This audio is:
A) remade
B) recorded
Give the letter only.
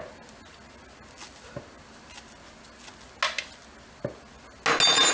B